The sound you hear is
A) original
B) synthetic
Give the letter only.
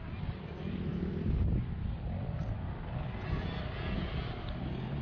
A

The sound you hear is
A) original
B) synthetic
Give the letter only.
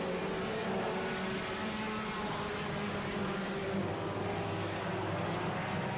A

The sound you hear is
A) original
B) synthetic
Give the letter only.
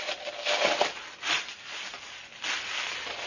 A